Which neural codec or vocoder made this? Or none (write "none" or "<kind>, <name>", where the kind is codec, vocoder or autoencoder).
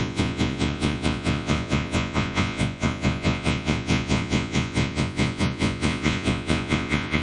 vocoder, Vocos